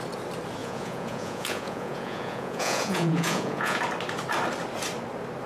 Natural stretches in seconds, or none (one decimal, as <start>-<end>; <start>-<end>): 0.0-0.6; 3.8-5.5